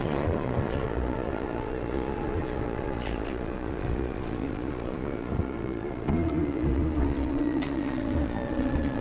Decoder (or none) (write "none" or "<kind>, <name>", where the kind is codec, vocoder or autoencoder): vocoder, Vocos